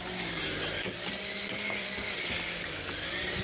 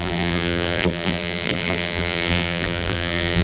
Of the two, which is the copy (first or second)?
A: second